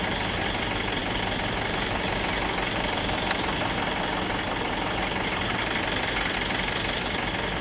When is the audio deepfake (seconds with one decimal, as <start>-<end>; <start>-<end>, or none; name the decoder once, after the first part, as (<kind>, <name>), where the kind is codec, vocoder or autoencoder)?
none